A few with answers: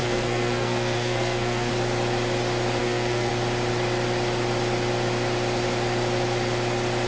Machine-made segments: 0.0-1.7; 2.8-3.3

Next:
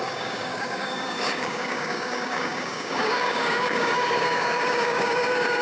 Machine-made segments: 0.0-5.6

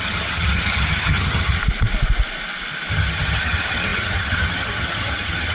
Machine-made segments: 0.0-1.6; 2.9-5.5

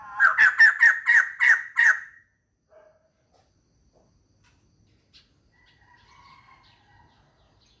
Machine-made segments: none

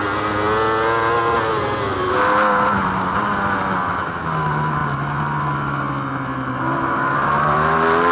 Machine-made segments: none

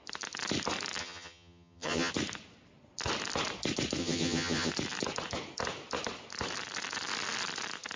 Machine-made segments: 1.0-2.1; 4.0-4.7